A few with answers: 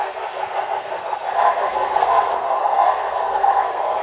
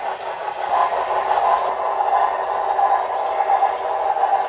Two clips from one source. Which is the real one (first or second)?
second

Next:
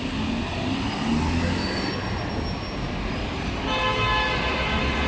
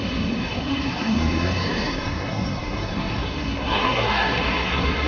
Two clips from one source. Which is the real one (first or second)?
first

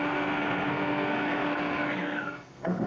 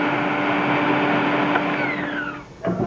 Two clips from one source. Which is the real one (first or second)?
second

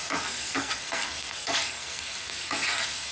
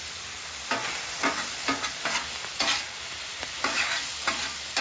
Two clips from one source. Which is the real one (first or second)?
second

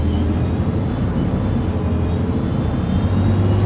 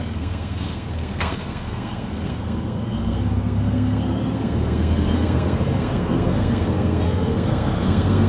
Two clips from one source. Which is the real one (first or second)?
first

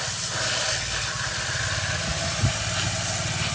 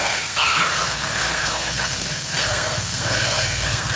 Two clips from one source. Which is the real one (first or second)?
first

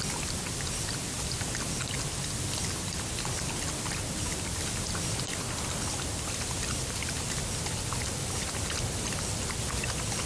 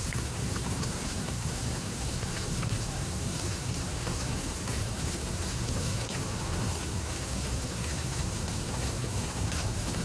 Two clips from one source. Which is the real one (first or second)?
first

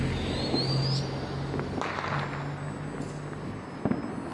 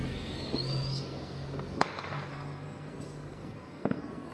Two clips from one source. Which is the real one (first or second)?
first